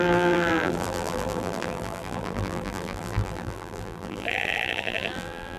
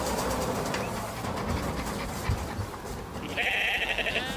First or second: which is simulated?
first